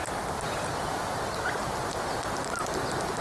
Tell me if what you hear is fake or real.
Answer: real